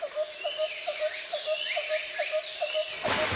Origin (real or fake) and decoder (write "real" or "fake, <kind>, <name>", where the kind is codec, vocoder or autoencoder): fake, vocoder, BigVGAN v2